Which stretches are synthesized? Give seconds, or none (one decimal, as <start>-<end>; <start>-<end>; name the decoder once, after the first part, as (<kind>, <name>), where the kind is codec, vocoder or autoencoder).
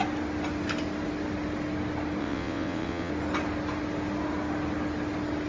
2.2-3.1 (vocoder, WaveNeXt)